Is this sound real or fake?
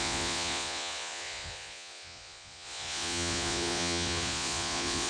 fake